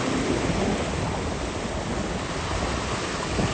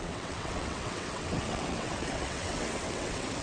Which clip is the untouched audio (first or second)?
first